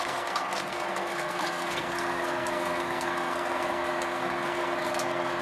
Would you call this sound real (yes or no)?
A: no